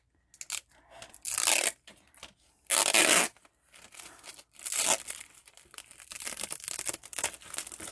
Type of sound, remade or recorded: recorded